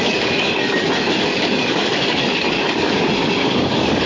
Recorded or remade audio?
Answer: remade